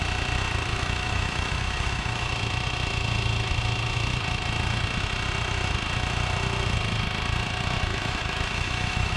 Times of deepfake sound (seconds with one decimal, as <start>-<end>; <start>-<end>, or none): 0.7-2.3; 7.9-9.2